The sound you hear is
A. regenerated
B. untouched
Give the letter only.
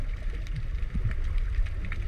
B